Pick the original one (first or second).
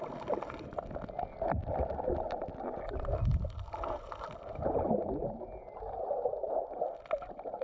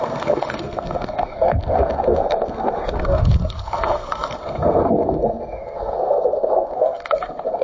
first